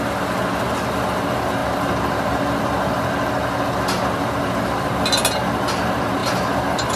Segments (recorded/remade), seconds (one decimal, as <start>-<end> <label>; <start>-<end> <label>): 0.0-7.0 recorded